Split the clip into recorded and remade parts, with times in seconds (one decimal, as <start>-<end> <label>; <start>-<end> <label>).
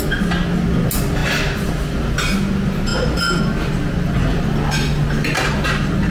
0.0-6.1 recorded